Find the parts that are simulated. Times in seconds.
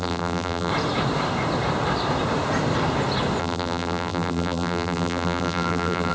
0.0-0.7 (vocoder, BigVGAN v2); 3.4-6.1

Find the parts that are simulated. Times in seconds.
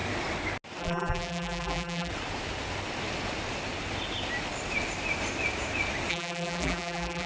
0.8-2.1 (vocoder, BigVGAN v2); 6.1-7.3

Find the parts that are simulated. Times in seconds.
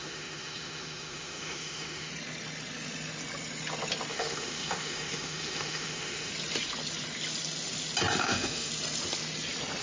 0.0-2.1 (autoencoder, DAC-VAE); 4.1-6.3; 8.2-8.7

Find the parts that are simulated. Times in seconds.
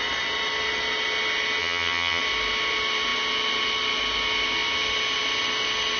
1.6-2.2 (vocoder, HiFi-GAN)